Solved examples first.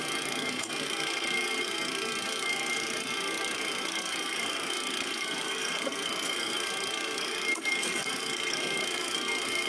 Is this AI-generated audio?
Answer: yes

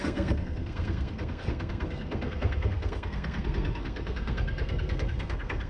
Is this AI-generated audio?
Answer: yes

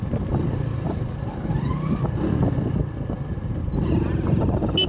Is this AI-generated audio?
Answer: no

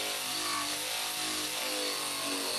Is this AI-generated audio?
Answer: no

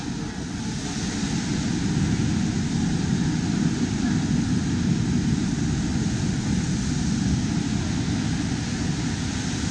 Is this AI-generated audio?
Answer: no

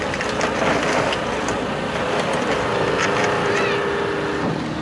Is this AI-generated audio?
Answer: no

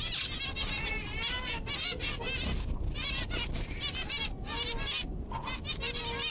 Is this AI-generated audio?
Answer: no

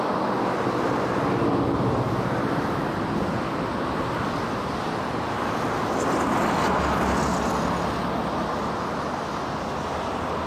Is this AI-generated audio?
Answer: no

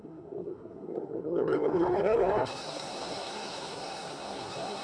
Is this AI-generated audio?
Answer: yes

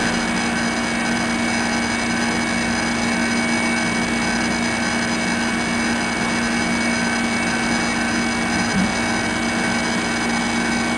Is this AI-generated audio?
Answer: no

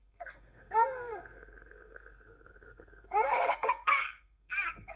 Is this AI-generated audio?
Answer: yes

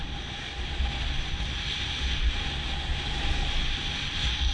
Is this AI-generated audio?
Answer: no